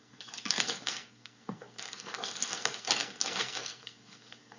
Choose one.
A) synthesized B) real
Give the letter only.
A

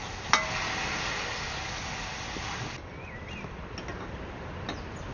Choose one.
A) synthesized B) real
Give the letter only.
B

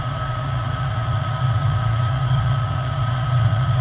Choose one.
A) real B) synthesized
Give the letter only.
B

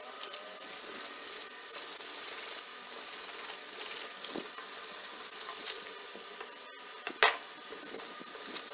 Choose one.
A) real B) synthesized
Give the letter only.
A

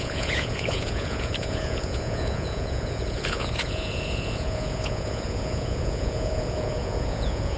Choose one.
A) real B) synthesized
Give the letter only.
B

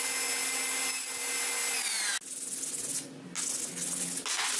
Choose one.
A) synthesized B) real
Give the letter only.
B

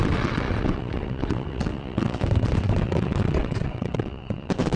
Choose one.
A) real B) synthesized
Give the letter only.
B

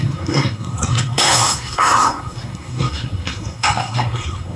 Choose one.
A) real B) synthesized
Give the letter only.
B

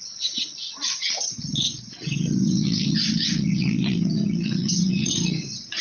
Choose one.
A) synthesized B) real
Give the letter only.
A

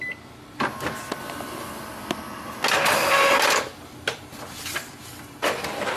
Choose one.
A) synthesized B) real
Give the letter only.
B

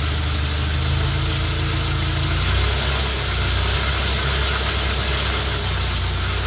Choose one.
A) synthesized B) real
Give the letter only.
B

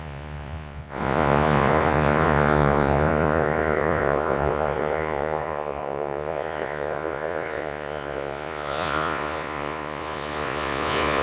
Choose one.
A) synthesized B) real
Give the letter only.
A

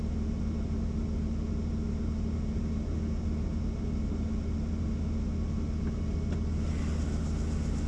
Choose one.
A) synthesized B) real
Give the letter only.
B